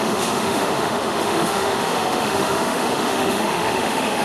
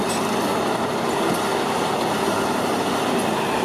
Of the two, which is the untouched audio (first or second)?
second